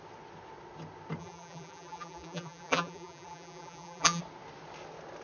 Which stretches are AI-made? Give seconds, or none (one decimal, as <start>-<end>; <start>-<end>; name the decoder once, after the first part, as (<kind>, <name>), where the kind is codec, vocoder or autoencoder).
1.2-4.2 (vocoder, BigVGAN v2)